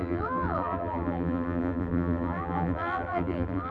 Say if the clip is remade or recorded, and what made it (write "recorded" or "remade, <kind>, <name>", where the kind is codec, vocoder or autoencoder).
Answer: remade, vocoder, BigVGAN v2